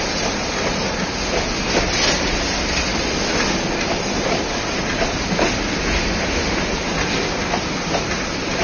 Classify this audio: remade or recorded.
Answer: recorded